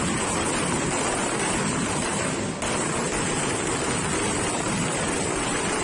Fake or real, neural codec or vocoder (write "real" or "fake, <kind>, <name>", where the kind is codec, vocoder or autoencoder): real